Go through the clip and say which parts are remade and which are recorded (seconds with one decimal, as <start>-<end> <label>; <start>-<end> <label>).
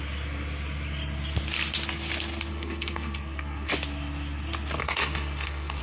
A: 0.0-2.5 recorded; 2.5-3.7 remade; 3.7-4.8 recorded; 4.8-5.8 remade